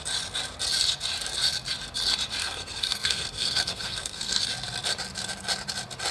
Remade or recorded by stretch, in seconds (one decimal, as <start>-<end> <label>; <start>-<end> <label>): 0.0-2.4 recorded; 2.4-4.4 remade; 4.4-6.1 recorded